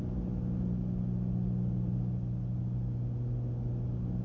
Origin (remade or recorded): recorded